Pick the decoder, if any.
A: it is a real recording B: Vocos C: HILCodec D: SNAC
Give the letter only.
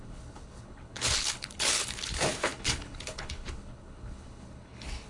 C